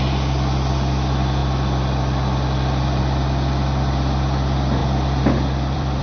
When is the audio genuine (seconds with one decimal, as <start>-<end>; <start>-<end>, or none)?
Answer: 0.0-4.8